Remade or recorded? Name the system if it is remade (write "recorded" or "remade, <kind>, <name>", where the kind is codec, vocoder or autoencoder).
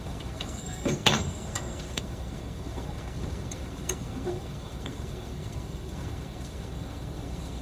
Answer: remade, codec, SNAC